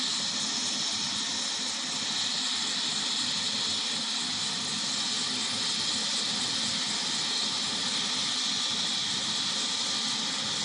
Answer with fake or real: real